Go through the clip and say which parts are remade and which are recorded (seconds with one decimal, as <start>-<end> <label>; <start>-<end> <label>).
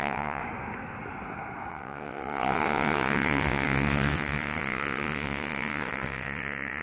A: 0.0-0.4 remade; 0.4-1.7 recorded; 1.7-6.8 remade